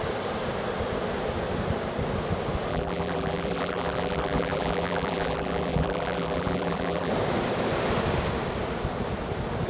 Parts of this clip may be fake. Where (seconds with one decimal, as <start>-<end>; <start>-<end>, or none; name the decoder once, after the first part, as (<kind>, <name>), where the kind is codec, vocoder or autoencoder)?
2.7-7.1 (vocoder, BigVGAN v2)